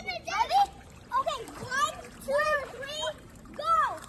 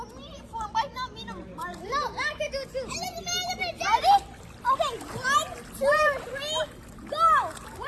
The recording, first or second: second